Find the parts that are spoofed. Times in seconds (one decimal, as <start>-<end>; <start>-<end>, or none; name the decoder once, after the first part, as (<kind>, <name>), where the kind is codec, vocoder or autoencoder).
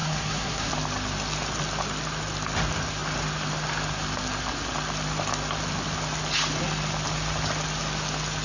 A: 0.0-0.7 (codec, SNAC)